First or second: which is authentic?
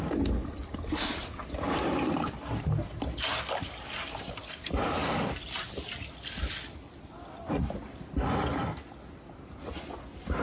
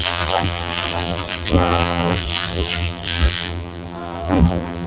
first